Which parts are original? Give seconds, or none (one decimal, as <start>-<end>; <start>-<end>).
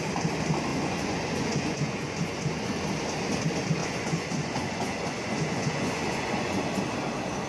0.0-0.7; 2.8-3.8; 6.6-7.5